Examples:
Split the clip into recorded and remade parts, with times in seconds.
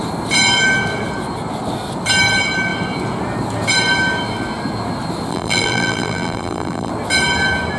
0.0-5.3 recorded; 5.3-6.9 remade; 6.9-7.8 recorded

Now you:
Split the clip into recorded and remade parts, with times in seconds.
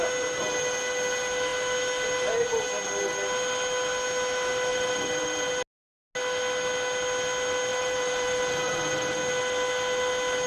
0.0-4.7 recorded; 4.7-5.5 remade; 5.5-7.7 recorded; 7.7-9.2 remade; 9.2-10.5 recorded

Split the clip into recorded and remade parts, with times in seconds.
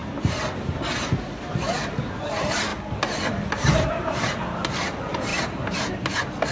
0.0-2.7 remade; 2.7-3.5 recorded; 3.5-6.5 remade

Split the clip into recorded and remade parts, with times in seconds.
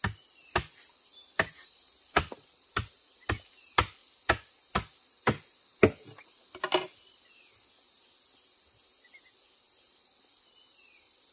0.0-1.1 recorded; 1.1-3.2 remade; 3.2-11.3 recorded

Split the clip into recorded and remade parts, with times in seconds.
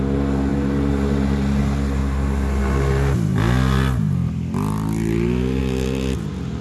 0.0-0.5 recorded; 0.5-1.6 remade; 1.6-2.0 recorded; 2.0-2.6 remade; 2.6-6.6 recorded